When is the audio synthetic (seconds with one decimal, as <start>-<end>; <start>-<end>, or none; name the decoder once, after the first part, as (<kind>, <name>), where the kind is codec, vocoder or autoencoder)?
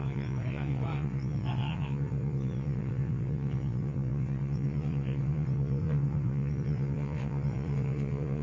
0.0-8.4 (vocoder, WaveNeXt)